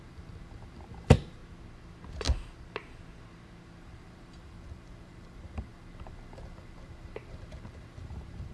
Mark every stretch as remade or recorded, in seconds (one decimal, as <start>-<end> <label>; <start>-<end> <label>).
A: 0.0-1.4 remade; 1.4-3.8 recorded; 3.8-8.5 remade